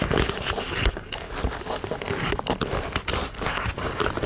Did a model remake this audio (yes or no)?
no